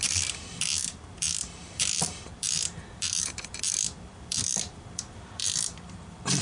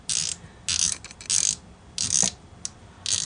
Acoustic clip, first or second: second